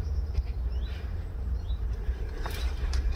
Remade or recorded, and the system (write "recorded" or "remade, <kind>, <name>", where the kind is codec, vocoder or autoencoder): remade, vocoder, BigVGAN v2